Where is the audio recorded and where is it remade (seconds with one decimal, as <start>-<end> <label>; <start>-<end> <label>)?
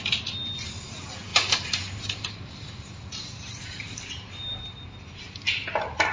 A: 0.0-1.3 recorded; 1.3-5.0 remade; 5.0-6.1 recorded